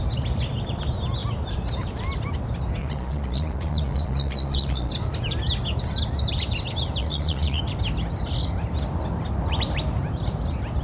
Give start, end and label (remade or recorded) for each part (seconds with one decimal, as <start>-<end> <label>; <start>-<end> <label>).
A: 0.0-2.8 recorded; 2.8-4.9 remade; 4.9-7.0 recorded; 7.0-7.6 remade; 7.6-10.8 recorded